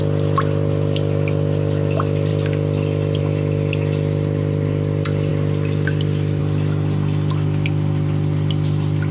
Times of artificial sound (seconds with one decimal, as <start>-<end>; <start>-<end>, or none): none